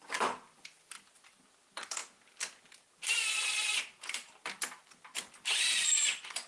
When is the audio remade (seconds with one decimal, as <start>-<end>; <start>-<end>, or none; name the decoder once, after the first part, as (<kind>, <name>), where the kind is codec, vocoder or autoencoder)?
0.0-6.5 (vocoder, BigVGAN v2)

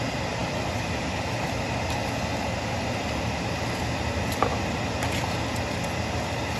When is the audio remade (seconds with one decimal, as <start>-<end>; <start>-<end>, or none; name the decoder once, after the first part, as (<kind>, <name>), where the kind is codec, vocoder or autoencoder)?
none

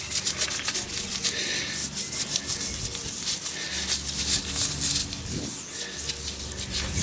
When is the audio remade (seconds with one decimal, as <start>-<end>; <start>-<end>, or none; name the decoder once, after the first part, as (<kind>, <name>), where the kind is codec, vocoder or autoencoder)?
none

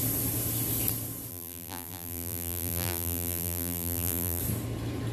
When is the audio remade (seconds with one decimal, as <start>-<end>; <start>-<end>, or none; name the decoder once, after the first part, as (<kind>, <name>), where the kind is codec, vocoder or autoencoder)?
1.3-4.4 (vocoder, BigVGAN v2)

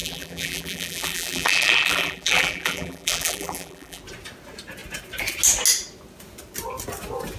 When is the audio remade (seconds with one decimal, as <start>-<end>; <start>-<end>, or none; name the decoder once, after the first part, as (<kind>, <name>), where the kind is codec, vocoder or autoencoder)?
0.0-4.0 (vocoder, BigVGAN v2)

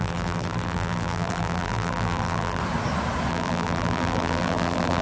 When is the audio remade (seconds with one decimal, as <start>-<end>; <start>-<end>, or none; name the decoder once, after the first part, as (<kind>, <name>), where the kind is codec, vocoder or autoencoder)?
0.0-2.6 (vocoder, BigVGAN v2); 3.3-5.0